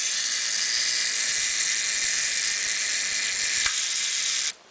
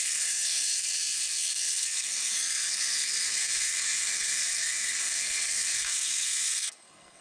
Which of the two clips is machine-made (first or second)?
second